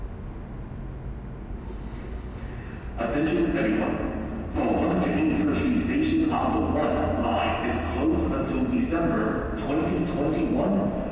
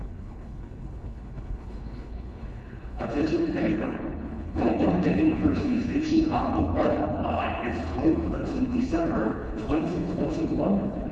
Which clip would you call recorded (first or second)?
first